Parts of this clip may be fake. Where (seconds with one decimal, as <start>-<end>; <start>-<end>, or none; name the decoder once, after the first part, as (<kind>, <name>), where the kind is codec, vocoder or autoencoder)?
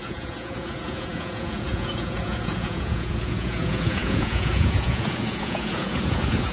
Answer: 0.0-6.5 (vocoder, Vocos)